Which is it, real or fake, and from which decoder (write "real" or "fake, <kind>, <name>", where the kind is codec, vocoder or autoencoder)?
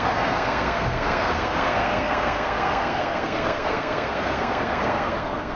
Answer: fake, codec, SNAC